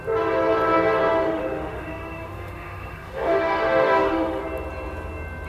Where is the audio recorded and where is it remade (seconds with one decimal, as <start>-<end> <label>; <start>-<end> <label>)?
0.0-1.1 recorded; 1.1-4.4 remade; 4.4-5.5 recorded